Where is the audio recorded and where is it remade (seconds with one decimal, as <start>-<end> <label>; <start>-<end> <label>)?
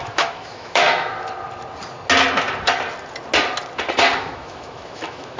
0.0-1.1 remade; 1.1-4.2 recorded; 4.2-5.4 remade